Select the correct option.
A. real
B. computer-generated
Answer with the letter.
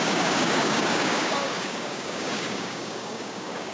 B